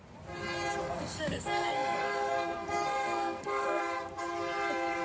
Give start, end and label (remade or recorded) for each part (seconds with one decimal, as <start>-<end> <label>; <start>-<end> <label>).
0.0-0.8 recorded; 0.8-3.8 remade; 3.8-5.0 recorded